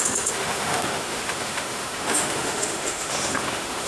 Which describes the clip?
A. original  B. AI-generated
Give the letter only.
B